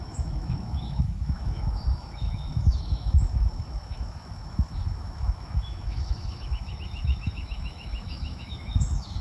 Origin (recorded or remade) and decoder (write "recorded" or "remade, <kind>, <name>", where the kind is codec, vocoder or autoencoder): remade, autoencoder, DAC-VAE